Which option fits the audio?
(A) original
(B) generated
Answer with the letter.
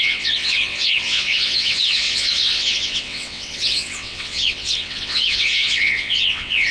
B